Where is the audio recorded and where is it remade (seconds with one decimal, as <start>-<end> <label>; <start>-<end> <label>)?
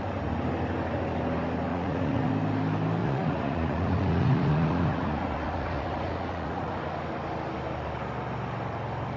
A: 0.0-1.7 recorded; 1.7-2.3 remade; 2.3-3.0 recorded; 3.0-6.7 remade; 6.7-9.2 recorded